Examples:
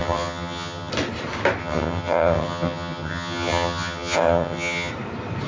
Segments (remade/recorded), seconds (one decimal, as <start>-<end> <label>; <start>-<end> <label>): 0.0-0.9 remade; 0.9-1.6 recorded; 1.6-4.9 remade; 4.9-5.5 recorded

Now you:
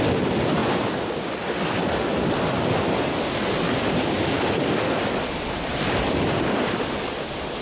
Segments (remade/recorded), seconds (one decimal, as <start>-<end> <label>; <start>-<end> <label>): 0.0-7.6 recorded

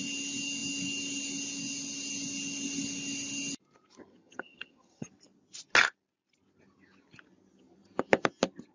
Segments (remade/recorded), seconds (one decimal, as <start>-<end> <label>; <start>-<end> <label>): 0.0-4.1 recorded; 4.1-5.1 remade; 5.1-8.7 recorded

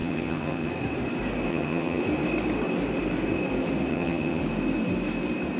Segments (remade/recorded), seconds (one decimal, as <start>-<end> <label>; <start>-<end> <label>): 0.0-0.7 remade; 0.7-1.5 recorded; 1.5-2.0 remade; 2.0-3.9 recorded; 3.9-4.4 remade; 4.4-5.6 recorded

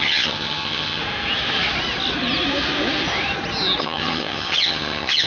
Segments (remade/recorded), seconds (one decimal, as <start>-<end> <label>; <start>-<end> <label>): 0.0-1.0 remade; 1.0-3.8 recorded; 3.8-5.3 remade

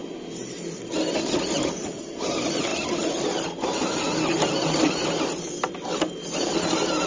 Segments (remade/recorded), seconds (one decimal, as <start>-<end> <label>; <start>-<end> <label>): 0.0-7.1 recorded